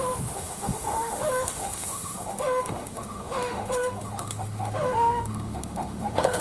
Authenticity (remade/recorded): remade